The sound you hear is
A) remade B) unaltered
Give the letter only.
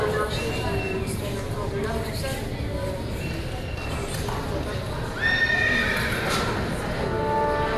B